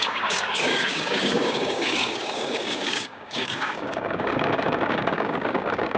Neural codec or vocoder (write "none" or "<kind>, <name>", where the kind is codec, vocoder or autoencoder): codec, DAC